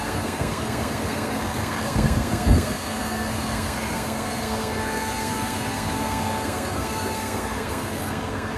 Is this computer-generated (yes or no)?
yes